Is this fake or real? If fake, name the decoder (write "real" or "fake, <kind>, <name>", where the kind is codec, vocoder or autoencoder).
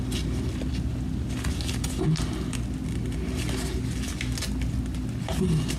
real